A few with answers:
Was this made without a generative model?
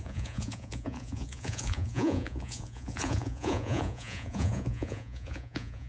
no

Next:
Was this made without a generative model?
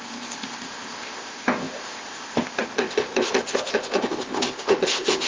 no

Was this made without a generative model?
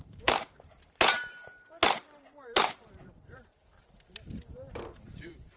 no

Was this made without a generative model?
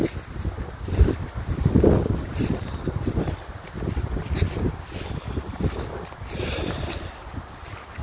yes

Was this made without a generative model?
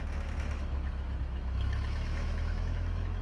no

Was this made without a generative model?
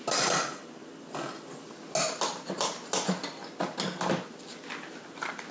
yes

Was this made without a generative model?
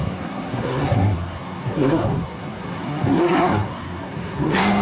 no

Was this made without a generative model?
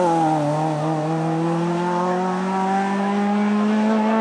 yes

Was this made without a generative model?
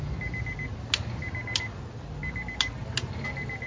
yes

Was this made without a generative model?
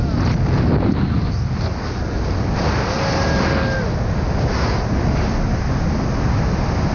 yes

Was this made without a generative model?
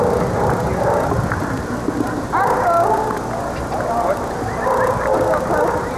yes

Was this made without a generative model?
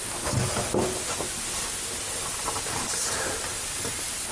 yes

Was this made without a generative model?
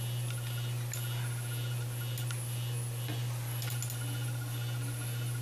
yes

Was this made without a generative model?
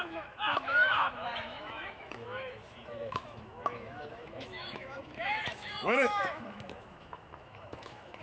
no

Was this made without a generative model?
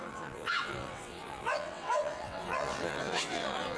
no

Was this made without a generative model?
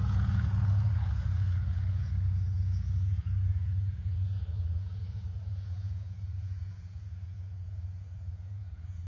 no